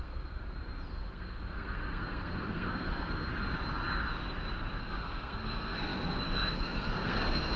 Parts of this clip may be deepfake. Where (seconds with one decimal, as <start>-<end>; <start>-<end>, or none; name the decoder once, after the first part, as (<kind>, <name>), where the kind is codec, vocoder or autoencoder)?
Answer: 0.0-0.4 (codec, SNAC); 0.9-3.3; 4.8-7.6

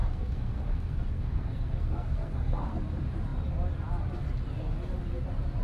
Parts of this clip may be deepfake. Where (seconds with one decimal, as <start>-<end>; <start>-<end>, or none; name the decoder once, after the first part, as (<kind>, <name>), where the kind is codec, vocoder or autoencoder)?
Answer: 0.0-2.8 (codec, SNAC)

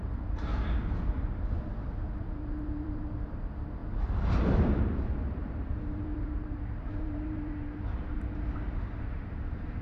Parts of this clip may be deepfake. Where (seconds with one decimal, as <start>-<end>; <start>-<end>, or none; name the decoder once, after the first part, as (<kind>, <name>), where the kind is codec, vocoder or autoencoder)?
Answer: 0.0-0.5 (vocoder, BigVGAN v2); 1.1-3.8; 4.4-9.8